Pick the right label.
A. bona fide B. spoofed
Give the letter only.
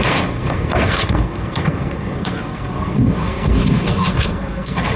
B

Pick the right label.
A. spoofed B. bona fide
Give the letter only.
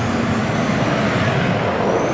B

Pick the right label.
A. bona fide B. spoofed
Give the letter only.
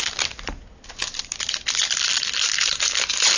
A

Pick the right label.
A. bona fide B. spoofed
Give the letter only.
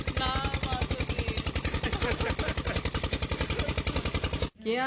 A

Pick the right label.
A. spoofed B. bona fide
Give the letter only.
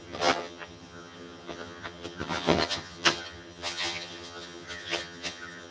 A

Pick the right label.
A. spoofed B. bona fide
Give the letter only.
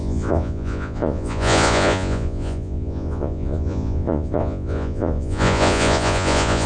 A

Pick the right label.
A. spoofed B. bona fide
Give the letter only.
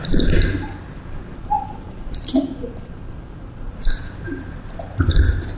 A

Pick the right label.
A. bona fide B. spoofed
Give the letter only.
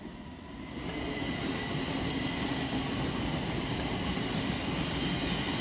A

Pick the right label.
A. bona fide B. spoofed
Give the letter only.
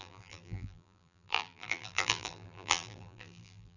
B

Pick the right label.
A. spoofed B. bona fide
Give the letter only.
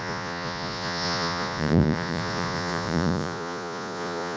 A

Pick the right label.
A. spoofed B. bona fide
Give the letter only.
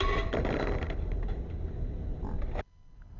B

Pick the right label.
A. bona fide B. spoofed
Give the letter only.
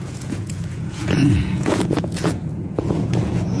B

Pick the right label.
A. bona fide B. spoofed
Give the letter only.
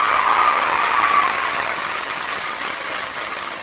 B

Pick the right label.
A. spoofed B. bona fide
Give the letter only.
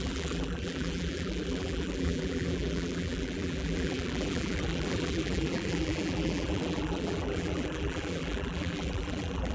A